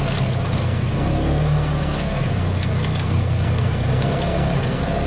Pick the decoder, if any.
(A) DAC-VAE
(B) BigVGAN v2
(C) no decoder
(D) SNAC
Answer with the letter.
D